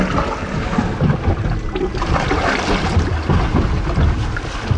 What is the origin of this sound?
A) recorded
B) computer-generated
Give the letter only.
A